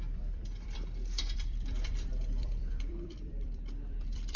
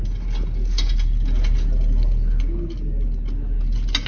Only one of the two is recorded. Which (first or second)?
second